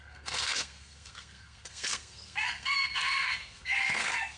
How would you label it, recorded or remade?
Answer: remade